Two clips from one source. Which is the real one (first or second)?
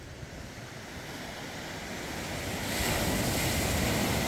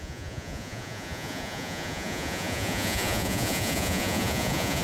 first